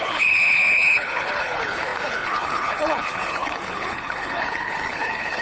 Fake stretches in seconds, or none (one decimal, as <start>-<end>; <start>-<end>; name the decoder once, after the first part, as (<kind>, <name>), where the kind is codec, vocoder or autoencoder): 0.0-5.4 (codec, HILCodec)